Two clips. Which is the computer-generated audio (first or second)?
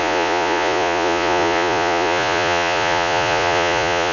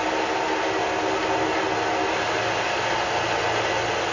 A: first